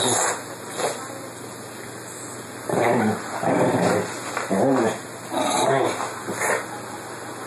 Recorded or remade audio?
recorded